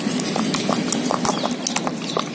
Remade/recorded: recorded